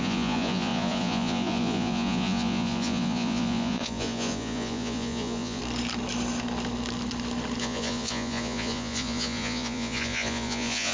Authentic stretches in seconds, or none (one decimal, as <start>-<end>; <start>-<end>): 5.6-7.6